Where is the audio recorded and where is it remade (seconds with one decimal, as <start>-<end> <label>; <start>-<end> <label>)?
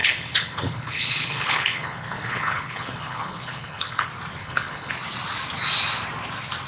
0.0-4.0 remade; 4.0-4.4 recorded; 4.4-4.9 remade; 4.9-6.7 recorded